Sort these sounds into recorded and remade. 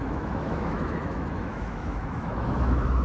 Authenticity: remade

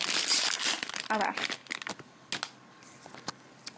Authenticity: recorded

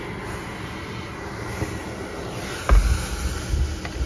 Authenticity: recorded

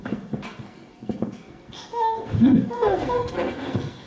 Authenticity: remade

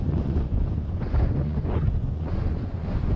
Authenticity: remade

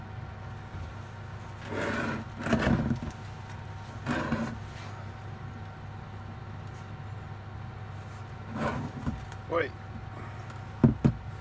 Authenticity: recorded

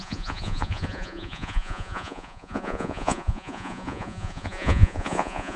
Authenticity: remade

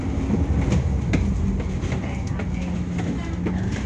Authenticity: recorded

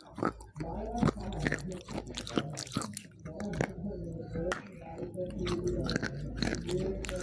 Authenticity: recorded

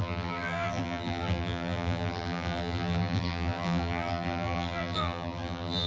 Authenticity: remade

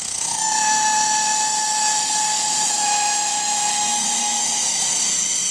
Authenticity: remade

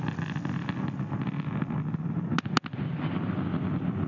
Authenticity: recorded